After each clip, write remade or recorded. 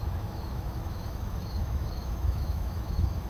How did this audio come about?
remade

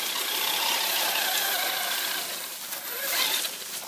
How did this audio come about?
recorded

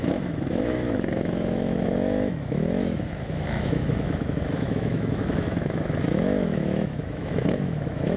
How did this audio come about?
remade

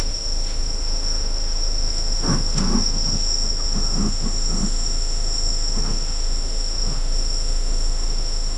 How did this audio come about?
remade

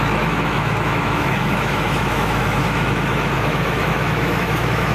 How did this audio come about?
remade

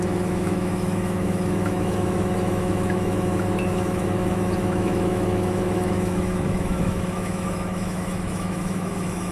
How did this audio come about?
remade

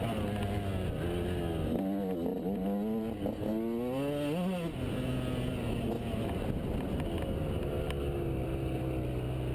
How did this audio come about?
recorded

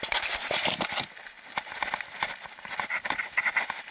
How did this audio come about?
recorded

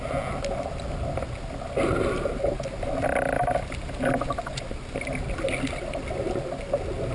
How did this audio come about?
recorded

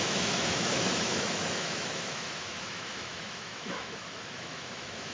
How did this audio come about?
remade